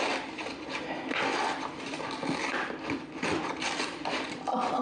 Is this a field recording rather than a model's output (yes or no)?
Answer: yes